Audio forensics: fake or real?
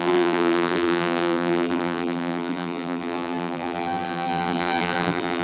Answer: fake